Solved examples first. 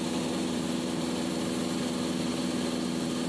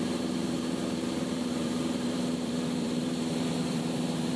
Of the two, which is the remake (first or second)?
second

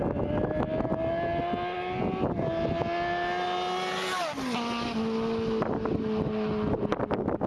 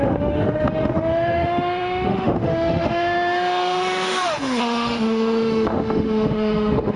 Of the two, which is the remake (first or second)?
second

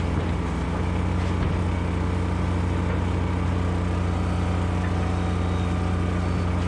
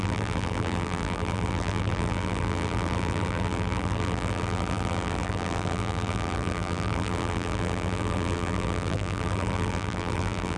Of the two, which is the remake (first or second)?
second